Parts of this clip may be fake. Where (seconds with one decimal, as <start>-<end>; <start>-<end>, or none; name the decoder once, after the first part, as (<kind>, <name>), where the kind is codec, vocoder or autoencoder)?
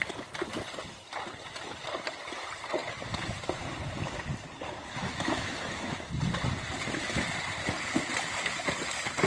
5.0-6.1 (autoencoder, DAC-VAE)